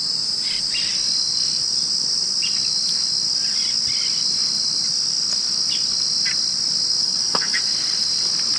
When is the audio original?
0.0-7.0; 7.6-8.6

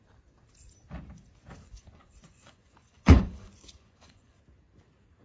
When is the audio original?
0.0-1.6; 4.4-5.2

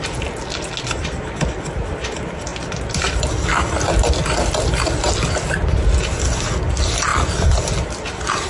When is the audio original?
0.0-8.5

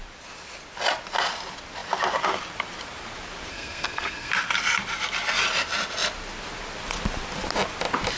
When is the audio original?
0.0-3.5; 4.3-8.2

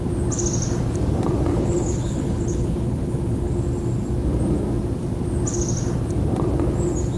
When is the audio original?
0.0-1.5; 3.6-7.2

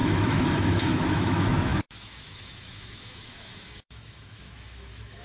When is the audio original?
none